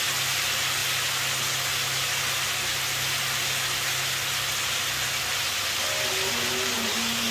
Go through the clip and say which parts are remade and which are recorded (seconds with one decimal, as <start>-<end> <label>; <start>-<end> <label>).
0.0-7.3 recorded